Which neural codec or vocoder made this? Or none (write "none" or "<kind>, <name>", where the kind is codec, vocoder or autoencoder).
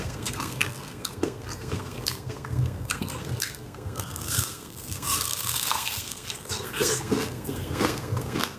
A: codec, SNAC